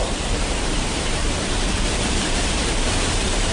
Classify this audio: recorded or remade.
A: remade